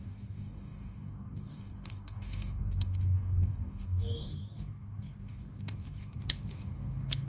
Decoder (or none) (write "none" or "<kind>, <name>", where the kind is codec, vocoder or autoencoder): codec, DAC